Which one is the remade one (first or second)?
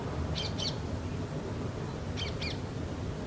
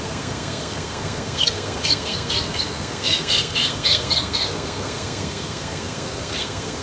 second